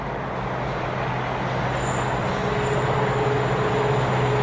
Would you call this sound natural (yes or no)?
yes